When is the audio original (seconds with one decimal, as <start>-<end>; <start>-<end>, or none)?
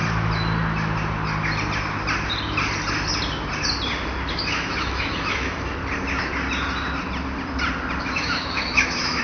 0.0-4.3; 5.8-8.0